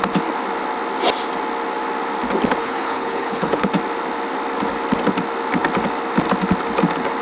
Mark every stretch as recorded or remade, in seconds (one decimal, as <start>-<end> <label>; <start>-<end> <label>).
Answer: 0.0-2.6 recorded; 2.6-3.7 remade; 3.7-7.2 recorded